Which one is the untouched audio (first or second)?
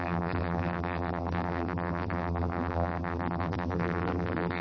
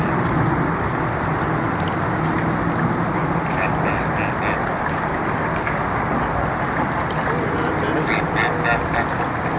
second